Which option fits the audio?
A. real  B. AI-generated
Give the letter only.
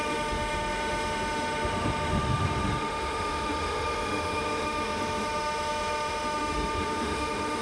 B